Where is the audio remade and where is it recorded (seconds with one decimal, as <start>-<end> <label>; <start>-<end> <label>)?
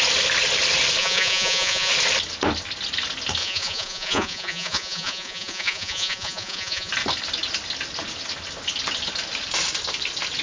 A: 0.0-1.0 recorded; 1.0-1.9 remade; 1.9-3.4 recorded; 3.4-6.9 remade; 6.9-10.4 recorded